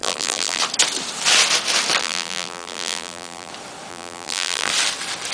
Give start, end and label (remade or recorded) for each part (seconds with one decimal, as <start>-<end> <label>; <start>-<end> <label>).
0.0-0.6 remade; 0.6-2.0 recorded; 2.0-3.5 remade; 3.5-3.9 recorded; 3.9-4.7 remade; 4.7-5.3 recorded